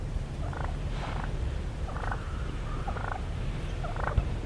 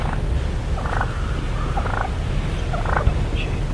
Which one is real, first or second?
second